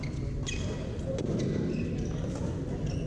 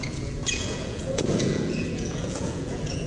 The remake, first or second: second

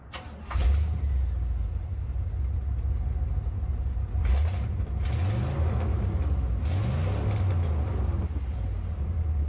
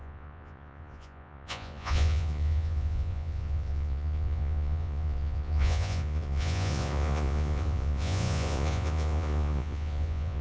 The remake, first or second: second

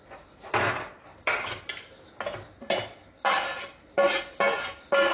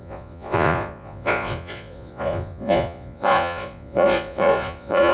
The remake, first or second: second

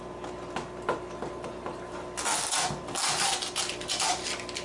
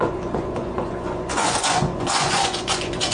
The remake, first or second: second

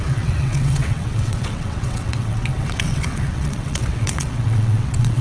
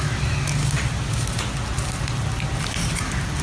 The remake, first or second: first